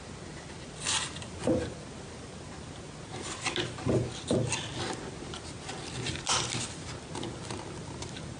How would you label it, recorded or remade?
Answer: recorded